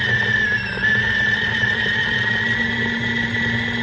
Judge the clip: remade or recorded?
recorded